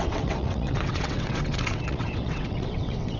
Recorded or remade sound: remade